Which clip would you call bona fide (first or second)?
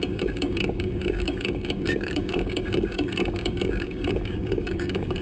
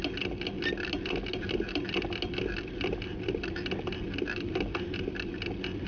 second